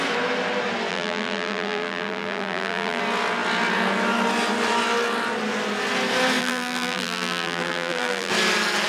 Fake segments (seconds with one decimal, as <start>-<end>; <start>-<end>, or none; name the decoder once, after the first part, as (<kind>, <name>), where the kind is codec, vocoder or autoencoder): 0.9-3.0 (vocoder, BigVGAN v2); 6.4-8.3